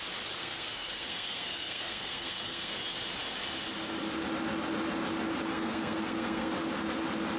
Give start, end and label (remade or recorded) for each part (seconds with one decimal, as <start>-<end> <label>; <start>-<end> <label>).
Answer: 0.0-0.4 recorded; 0.4-2.7 remade; 2.7-5.5 recorded; 5.5-6.5 remade; 6.5-7.4 recorded